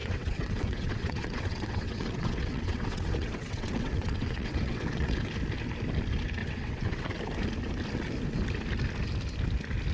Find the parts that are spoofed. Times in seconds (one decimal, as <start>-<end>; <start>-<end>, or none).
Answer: 0.0-5.3; 6.4-7.2